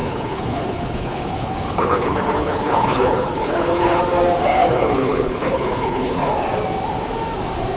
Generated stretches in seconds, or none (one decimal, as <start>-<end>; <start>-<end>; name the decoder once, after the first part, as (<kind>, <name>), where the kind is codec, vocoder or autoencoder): 0.0-4.0 (codec, HILCodec); 4.6-6.3